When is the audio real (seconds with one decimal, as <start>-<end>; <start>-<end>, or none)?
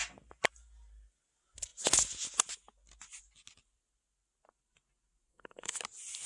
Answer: 0.0-5.3; 5.8-6.3